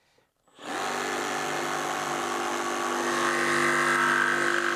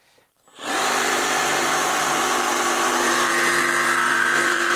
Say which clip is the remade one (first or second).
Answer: second